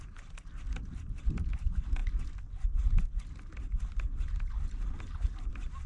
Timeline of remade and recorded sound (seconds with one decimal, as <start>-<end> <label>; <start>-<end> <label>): 0.0-5.9 recorded